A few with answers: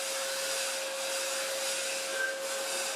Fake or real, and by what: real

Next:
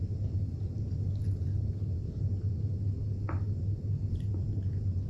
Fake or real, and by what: real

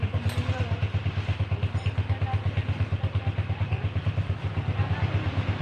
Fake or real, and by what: real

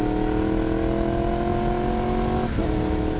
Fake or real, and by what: real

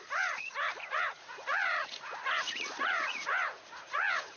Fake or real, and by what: fake, vocoder, Vocos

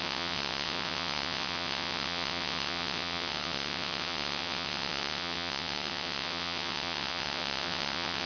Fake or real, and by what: fake, vocoder, WaveNeXt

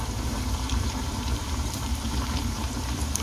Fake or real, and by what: fake, vocoder, BigVGAN v2